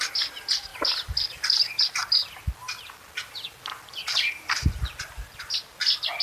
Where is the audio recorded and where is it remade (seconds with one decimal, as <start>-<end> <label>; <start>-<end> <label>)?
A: 0.0-0.7 recorded; 0.7-1.8 remade; 1.8-6.2 recorded

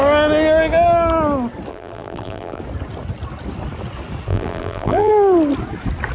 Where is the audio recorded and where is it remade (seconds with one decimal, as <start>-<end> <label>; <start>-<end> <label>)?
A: 0.0-1.7 recorded; 1.7-2.6 remade; 2.6-4.3 recorded; 4.3-5.1 remade; 5.1-6.1 recorded

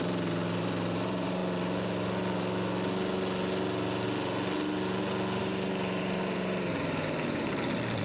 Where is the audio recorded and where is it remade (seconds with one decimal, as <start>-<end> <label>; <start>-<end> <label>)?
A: 0.0-1.4 remade; 1.4-5.4 recorded; 5.4-8.0 remade

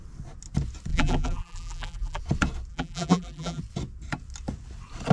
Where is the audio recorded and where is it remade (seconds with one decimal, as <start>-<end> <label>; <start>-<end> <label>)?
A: 0.0-0.9 recorded; 0.9-2.2 remade; 2.2-2.7 recorded; 2.7-3.6 remade; 3.6-5.1 recorded

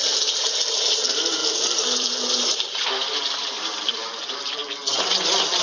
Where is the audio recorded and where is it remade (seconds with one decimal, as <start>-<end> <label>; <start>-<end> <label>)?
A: 0.0-0.7 recorded; 0.7-4.6 remade; 4.6-5.6 recorded

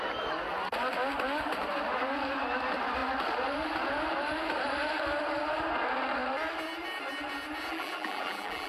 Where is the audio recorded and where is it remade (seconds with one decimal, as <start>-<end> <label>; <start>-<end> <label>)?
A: 0.0-7.7 recorded; 7.7-8.7 remade

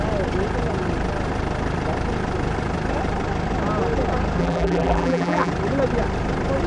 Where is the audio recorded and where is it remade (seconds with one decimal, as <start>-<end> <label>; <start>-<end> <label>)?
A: 0.0-4.4 recorded; 4.4-5.5 remade; 5.5-6.7 recorded